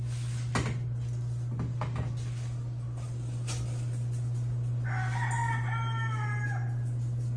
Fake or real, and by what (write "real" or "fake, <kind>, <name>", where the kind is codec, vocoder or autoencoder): real